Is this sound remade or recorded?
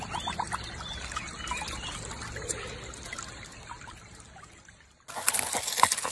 recorded